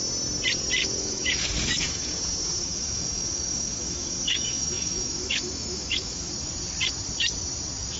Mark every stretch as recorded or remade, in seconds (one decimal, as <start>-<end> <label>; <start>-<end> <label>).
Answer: 0.0-0.8 recorded; 0.8-2.2 remade; 2.2-2.6 recorded; 2.6-6.3 remade; 6.3-8.0 recorded